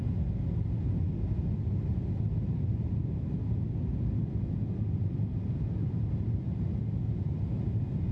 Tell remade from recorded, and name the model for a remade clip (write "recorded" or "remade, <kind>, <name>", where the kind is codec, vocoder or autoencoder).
recorded